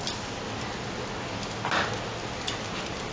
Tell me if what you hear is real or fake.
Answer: real